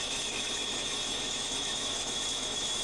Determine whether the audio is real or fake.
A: fake